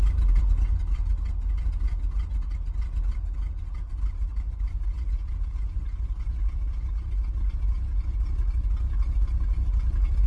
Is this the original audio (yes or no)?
yes